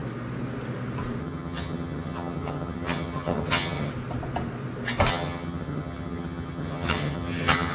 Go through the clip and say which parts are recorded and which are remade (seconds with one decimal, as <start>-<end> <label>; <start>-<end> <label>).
0.0-1.2 recorded; 1.2-3.9 remade; 3.9-5.1 recorded; 5.1-7.7 remade